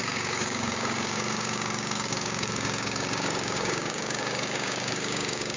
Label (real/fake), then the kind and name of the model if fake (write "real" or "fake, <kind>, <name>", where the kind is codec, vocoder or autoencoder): fake, codec, DAC